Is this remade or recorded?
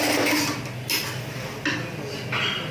recorded